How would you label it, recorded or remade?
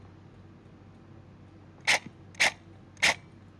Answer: recorded